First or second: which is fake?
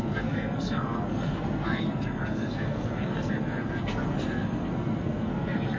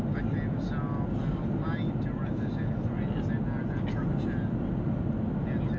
first